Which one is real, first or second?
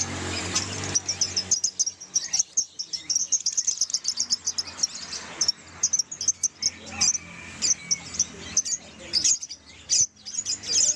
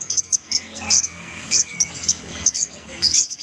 first